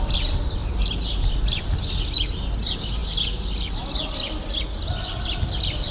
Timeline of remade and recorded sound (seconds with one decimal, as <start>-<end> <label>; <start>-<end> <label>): 0.0-5.9 recorded